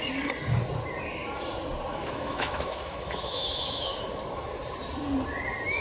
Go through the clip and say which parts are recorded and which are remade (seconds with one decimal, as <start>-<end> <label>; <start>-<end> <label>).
0.0-1.9 recorded; 1.9-4.1 remade; 4.1-5.8 recorded

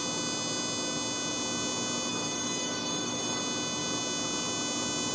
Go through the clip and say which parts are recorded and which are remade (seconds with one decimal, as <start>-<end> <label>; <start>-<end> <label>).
0.0-2.1 recorded; 2.1-3.4 remade; 3.4-5.1 recorded

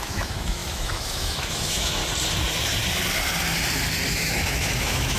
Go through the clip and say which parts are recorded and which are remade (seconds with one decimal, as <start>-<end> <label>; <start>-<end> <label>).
0.0-2.0 remade; 2.0-4.1 recorded; 4.1-5.2 remade

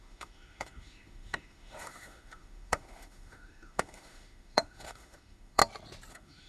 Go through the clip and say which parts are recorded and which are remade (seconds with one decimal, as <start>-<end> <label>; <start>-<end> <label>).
0.0-5.6 remade; 5.6-6.1 recorded; 6.1-6.5 remade

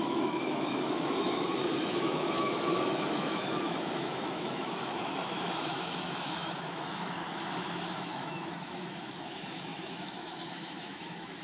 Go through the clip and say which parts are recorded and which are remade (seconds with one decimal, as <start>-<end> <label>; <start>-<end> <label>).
0.0-11.4 remade

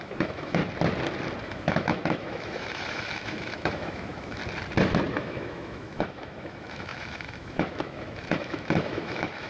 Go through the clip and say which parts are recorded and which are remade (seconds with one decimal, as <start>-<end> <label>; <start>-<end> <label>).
0.0-0.6 remade; 0.6-1.4 recorded; 1.4-4.4 remade; 4.4-5.2 recorded; 5.2-9.5 remade

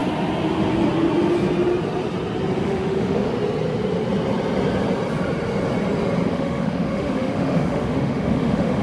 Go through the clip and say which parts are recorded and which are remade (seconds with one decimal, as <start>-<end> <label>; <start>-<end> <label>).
0.0-2.6 recorded; 2.6-3.3 remade; 3.3-6.3 recorded; 6.3-8.8 remade